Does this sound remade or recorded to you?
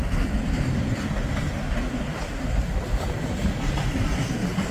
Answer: recorded